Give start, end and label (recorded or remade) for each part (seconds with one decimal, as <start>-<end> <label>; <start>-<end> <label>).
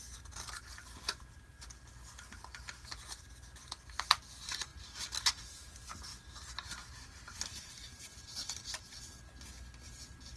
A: 0.0-10.4 recorded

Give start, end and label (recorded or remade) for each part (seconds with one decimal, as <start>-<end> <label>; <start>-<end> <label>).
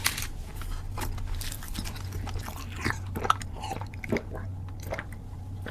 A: 0.0-0.5 remade; 0.5-2.8 recorded; 2.8-4.5 remade; 4.5-5.2 recorded; 5.2-5.7 remade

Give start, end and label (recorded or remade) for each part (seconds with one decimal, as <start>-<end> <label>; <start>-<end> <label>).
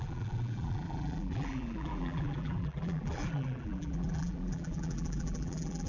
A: 0.0-5.9 remade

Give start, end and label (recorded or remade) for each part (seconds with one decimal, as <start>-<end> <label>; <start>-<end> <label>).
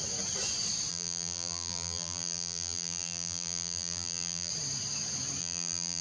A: 0.0-0.9 recorded; 0.9-4.5 remade; 4.5-5.4 recorded; 5.4-6.0 remade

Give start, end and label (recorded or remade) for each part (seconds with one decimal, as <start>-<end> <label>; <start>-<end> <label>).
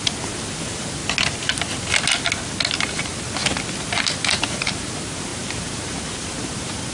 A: 0.0-1.0 remade; 1.0-2.7 recorded; 2.7-3.1 remade; 3.1-3.8 recorded; 3.8-6.9 remade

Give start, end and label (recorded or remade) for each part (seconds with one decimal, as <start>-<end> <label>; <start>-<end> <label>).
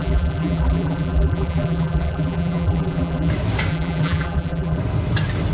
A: 0.0-3.3 remade; 3.3-3.7 recorded; 3.7-4.8 remade; 4.8-5.5 recorded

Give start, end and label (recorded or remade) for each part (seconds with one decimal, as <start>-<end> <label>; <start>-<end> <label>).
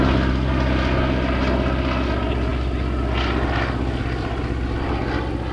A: 0.0-5.5 recorded